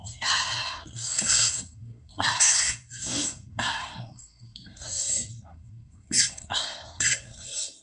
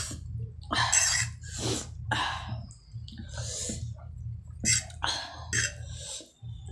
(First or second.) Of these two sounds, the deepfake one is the first